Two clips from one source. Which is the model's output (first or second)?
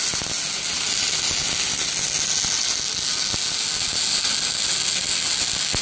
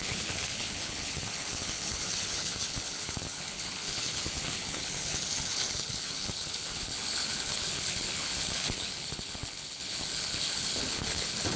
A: second